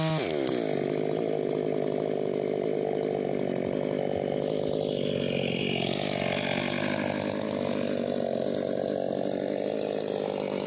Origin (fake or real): real